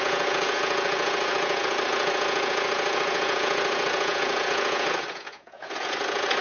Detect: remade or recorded remade